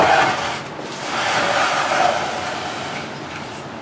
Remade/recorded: recorded